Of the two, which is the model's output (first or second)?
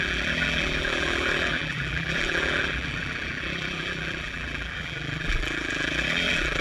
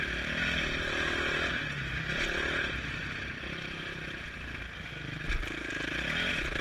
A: first